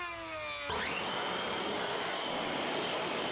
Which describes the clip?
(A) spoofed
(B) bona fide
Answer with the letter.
B